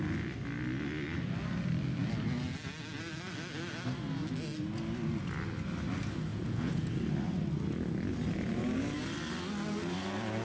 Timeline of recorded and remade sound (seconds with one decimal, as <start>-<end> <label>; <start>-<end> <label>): 0.0-6.3 recorded; 6.3-6.9 remade; 6.9-10.4 recorded